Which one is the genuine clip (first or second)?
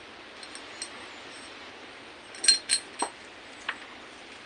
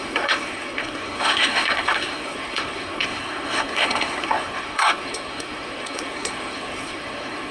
first